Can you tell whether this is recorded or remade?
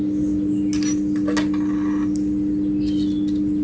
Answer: recorded